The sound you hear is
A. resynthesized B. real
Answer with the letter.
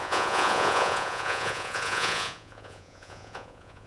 A